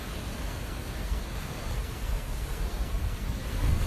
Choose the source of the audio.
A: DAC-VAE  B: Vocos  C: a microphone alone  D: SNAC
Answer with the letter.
D